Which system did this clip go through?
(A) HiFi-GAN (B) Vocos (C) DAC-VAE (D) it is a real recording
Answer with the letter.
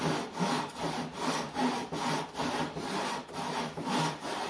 D